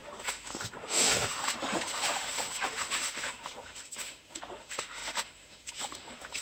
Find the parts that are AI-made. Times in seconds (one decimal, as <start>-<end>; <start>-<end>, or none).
0.0-6.4